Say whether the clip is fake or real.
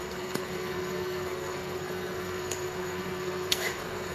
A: fake